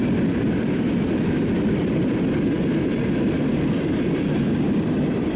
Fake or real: real